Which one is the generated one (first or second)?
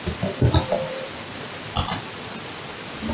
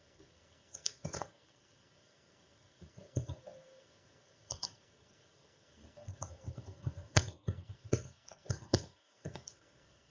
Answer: second